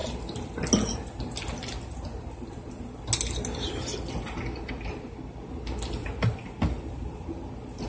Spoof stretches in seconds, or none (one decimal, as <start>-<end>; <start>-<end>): none